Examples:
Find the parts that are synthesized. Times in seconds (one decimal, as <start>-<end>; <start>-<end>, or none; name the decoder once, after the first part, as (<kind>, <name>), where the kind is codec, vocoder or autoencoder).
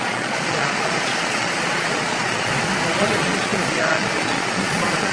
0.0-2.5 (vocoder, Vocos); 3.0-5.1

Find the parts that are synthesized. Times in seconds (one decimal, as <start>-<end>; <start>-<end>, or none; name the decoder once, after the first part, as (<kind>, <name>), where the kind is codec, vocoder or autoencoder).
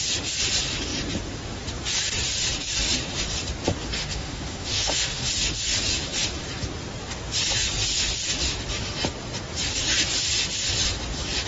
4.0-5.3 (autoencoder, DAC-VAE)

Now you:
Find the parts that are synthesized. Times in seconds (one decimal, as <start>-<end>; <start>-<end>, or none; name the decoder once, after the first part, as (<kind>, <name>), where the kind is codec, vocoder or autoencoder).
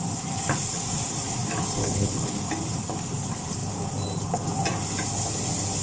1.8-2.3 (codec, HILCodec)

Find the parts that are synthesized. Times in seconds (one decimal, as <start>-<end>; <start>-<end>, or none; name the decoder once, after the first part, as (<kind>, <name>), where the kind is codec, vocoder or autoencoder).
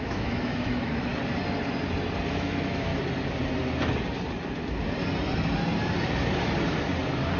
0.0-1.1 (autoencoder, DAC-VAE); 2.3-2.9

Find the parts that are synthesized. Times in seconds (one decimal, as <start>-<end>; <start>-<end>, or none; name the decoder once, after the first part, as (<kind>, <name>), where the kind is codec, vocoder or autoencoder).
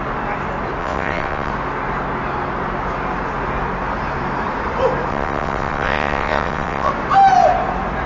0.8-1.5 (vocoder, WaveNeXt); 5.1-6.9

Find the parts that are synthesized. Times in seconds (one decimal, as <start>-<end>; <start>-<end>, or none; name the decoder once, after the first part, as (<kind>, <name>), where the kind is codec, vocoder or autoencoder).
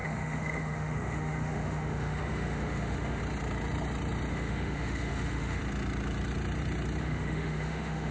0.0-3.2 (autoencoder, DAC-VAE); 4.3-5.6; 7.0-8.1